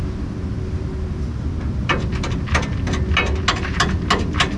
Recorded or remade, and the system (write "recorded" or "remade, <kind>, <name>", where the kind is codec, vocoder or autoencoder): recorded